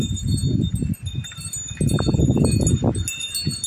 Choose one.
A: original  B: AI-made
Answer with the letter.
A